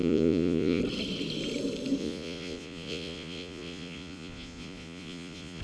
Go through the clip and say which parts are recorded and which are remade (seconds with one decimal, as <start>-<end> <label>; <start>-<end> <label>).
0.0-0.8 remade; 0.8-2.0 recorded; 2.0-5.6 remade